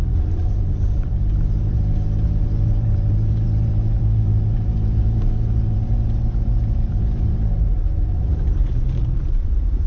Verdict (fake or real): fake